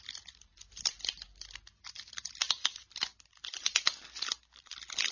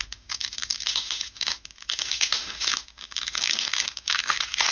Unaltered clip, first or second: first